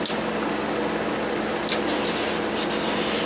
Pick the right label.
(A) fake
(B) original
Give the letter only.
B